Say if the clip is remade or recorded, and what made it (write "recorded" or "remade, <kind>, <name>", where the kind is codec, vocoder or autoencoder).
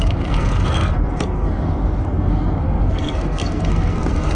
remade, codec, SNAC